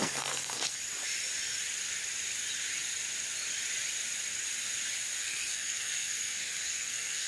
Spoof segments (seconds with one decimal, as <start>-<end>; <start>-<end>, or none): 0.0-0.8; 5.2-7.3